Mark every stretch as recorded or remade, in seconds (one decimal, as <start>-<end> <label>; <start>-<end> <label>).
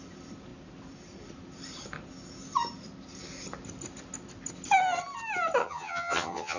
0.0-5.6 recorded; 5.6-6.6 remade